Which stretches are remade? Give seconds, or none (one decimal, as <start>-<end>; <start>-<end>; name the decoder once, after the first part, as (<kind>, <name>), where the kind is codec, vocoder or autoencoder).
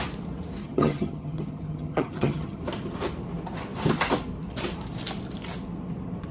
0.6-2.6 (vocoder, HiFi-GAN)